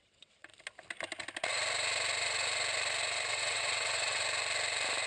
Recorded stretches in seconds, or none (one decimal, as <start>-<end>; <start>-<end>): 0.5-3.3; 4.2-5.1